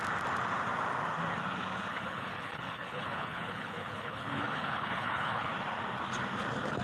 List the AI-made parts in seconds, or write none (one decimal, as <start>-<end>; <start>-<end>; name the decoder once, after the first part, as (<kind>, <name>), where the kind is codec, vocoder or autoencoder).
1.9-5.5 (codec, HILCodec)